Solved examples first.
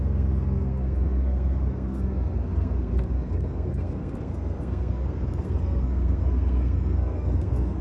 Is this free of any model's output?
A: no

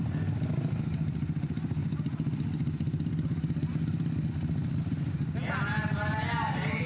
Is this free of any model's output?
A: yes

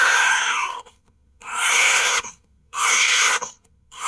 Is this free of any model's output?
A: no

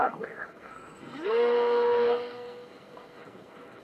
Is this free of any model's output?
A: no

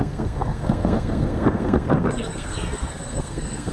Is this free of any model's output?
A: no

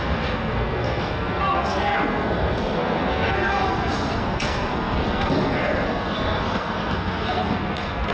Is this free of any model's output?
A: no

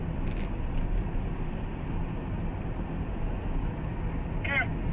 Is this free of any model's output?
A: yes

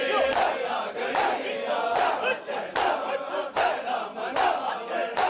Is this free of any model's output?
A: yes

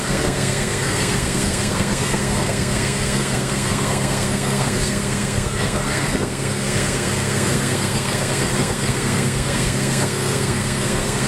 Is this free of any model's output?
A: no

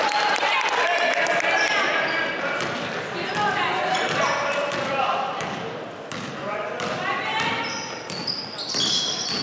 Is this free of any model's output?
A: yes